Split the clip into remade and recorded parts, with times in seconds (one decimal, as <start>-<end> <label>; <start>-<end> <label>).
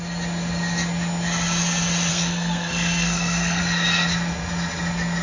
0.0-2.1 recorded; 2.1-3.6 remade; 3.6-5.2 recorded